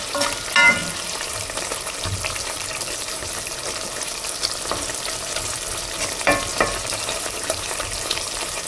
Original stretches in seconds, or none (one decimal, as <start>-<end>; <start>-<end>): 0.0-0.8; 4.1-6.5